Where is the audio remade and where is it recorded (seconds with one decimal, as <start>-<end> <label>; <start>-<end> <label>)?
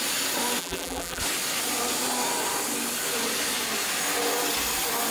0.0-0.6 recorded; 0.6-1.2 remade; 1.2-5.1 recorded